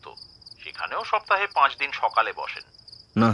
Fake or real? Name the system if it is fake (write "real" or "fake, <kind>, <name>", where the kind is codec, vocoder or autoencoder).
real